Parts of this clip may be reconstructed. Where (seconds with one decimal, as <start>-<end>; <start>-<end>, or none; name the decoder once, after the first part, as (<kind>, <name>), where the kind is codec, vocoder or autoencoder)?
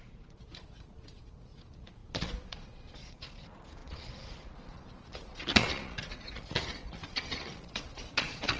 0.0-8.6 (vocoder, Vocos)